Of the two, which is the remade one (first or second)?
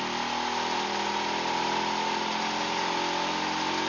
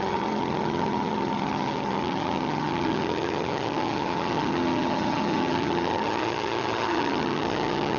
second